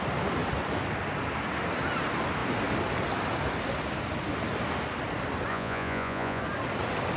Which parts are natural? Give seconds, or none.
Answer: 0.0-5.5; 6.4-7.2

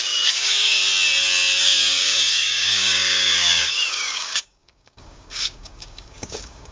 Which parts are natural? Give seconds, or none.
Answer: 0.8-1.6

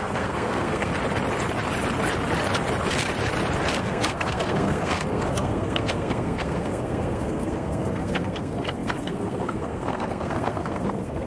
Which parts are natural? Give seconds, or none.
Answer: 0.9-3.8

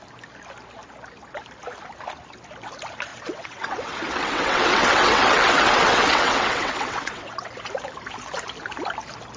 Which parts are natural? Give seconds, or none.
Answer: 0.0-3.1; 7.5-9.4